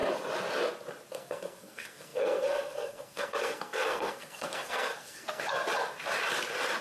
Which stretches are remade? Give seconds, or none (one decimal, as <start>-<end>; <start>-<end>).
1.1-5.6

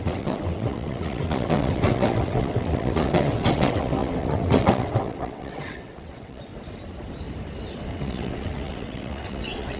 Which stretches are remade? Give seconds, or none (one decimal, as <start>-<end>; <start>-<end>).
0.0-6.5; 7.9-9.8

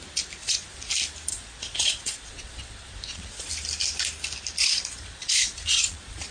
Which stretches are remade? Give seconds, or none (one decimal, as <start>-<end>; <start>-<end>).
0.4-0.9; 1.3-3.5; 4.6-6.3

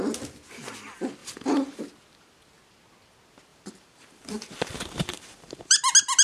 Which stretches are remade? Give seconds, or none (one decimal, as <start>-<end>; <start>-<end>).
1.2-1.8; 3.5-5.8

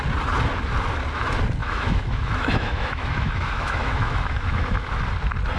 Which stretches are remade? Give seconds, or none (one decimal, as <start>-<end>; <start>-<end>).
1.6-5.0

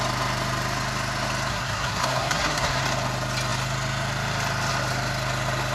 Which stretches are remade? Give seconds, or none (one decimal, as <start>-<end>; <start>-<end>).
1.5-2.8

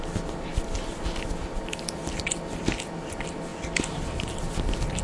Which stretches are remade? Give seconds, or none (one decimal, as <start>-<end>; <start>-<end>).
none

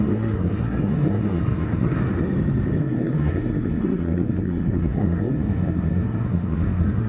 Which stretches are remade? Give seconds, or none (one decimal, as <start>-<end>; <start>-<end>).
0.0-2.0; 2.8-7.1